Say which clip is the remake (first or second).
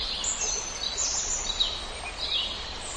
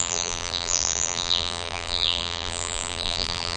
second